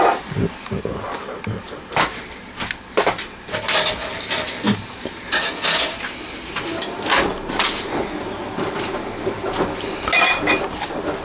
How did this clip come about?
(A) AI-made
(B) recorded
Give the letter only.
B